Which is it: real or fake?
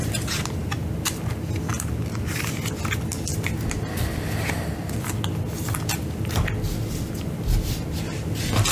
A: real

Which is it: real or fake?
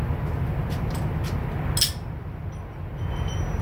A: real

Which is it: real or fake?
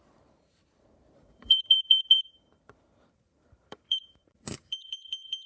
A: fake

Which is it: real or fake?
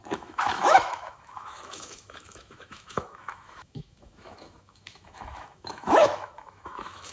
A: fake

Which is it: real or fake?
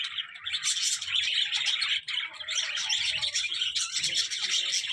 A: real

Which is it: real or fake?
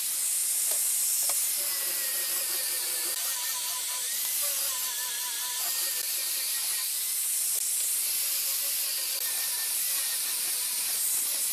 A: real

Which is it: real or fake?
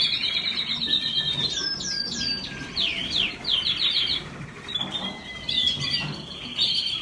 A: real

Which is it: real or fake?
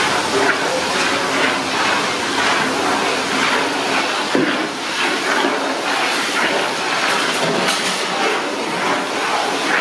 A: real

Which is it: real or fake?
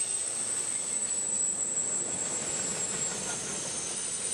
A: real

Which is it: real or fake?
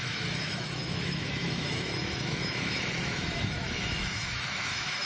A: fake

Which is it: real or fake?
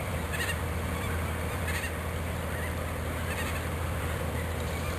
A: fake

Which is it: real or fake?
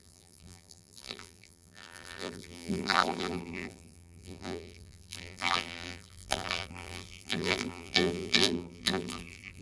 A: fake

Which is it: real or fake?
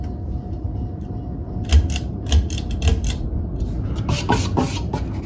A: real